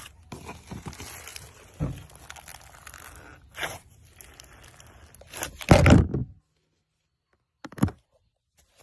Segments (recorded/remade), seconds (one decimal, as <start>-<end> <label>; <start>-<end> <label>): 0.0-8.8 recorded